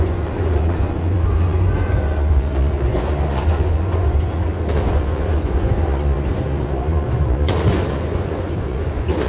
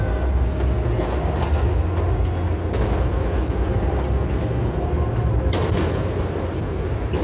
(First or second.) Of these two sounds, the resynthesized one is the first